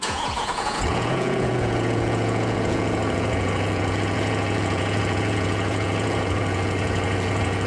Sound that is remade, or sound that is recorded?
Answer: remade